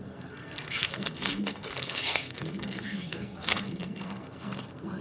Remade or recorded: remade